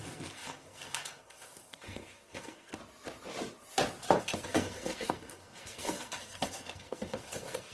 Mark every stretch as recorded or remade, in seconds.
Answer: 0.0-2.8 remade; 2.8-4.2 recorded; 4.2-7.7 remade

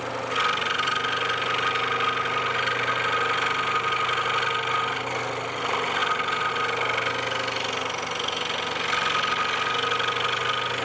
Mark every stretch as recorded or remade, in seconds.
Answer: 0.0-10.8 recorded

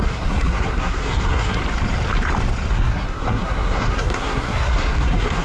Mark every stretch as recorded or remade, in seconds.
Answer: 0.0-1.6 remade; 1.6-2.7 recorded; 2.7-5.4 remade